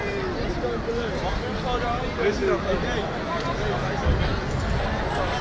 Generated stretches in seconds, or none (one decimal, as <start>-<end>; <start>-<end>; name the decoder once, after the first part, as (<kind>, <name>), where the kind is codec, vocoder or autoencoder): none